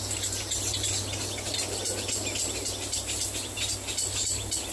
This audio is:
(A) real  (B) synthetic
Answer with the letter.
A